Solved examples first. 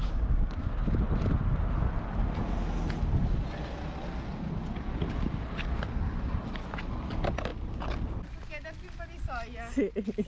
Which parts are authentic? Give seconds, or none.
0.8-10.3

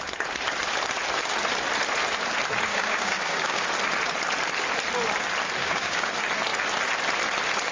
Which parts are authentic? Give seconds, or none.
0.0-2.7; 3.6-5.6; 6.1-7.7

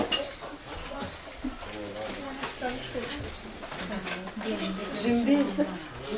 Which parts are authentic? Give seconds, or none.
0.0-6.2

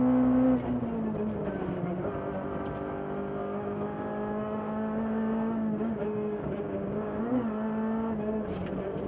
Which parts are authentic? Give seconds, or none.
0.0-3.4; 7.2-9.1

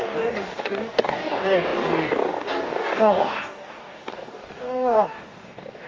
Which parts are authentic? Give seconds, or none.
none

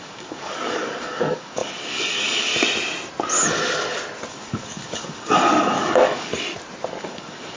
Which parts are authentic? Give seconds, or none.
2.5-4.3; 6.3-7.0

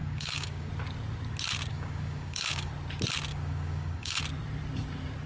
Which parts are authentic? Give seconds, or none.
0.7-1.7; 2.7-3.3; 4.2-5.3

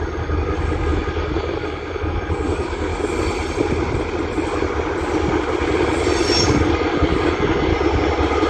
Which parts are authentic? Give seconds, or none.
2.9-6.4; 7.7-8.5